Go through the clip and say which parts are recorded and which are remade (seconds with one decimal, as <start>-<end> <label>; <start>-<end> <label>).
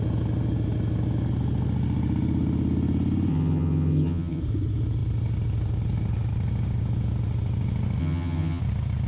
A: 0.0-3.3 recorded; 3.3-4.4 remade; 4.4-8.0 recorded; 8.0-8.6 remade; 8.6-9.1 recorded